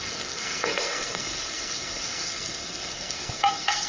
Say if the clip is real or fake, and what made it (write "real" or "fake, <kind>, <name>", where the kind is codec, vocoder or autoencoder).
fake, codec, SNAC